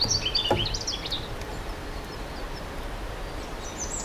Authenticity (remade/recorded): recorded